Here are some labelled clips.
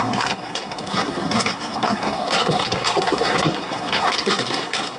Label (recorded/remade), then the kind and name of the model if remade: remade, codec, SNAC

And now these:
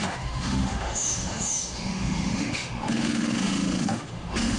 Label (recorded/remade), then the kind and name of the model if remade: remade, autoencoder, DAC-VAE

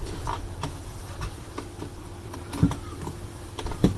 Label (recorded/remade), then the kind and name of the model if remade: remade, vocoder, BigVGAN v2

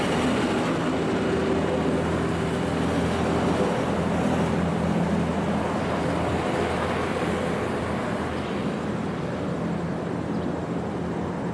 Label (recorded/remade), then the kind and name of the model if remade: recorded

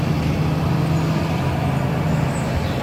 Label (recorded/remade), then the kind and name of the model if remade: recorded